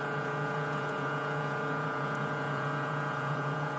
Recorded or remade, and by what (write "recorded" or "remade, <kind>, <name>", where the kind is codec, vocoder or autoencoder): remade, vocoder, Vocos